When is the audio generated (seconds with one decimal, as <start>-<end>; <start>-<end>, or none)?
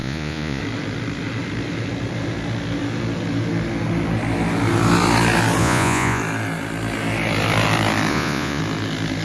0.0-0.6; 5.6-6.2; 8.1-8.6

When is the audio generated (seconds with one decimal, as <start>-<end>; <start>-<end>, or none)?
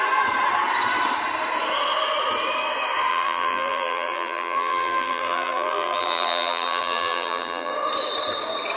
3.1-7.7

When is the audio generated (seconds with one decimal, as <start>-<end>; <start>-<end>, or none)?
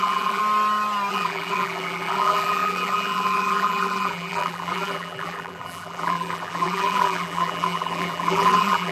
0.0-0.4; 1.1-8.9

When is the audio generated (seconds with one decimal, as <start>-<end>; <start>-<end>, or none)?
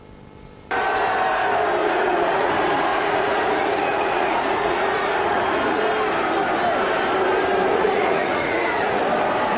1.8-2.5; 2.9-5.8; 7.7-9.0